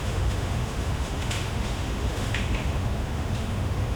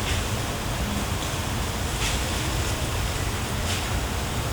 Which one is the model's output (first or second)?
first